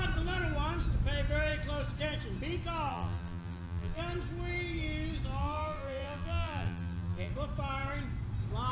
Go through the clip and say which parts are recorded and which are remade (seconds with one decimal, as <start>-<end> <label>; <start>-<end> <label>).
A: 0.0-2.9 recorded; 2.9-4.0 remade; 4.0-5.4 recorded; 5.4-7.3 remade; 7.3-8.7 recorded